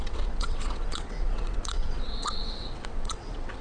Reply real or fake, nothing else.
fake